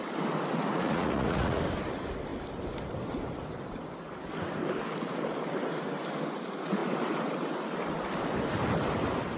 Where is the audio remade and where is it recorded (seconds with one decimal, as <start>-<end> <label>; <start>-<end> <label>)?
0.0-0.7 recorded; 0.7-1.6 remade; 1.6-9.4 recorded